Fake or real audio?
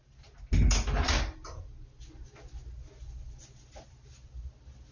real